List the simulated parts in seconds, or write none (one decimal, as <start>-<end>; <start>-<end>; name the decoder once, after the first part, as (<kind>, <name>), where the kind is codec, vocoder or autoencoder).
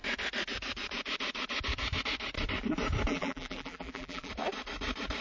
3.1-4.3 (vocoder, BigVGAN v2)